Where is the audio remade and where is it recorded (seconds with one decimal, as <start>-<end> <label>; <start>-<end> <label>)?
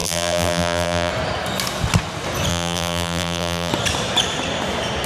0.0-1.1 remade; 1.1-2.5 recorded; 2.5-3.7 remade; 3.7-5.1 recorded